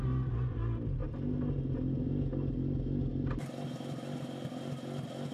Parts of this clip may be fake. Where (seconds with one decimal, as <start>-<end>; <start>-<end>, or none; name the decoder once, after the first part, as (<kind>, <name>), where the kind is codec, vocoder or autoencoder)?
none